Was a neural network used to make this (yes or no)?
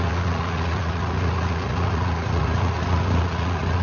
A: yes